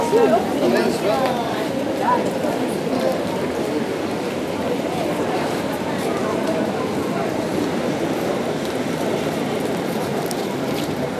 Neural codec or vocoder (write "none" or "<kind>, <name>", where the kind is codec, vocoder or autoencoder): vocoder, BigVGAN v2